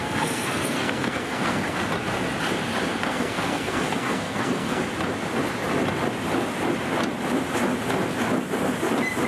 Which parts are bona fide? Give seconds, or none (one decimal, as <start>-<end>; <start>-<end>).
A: 1.8-2.9; 4.8-9.3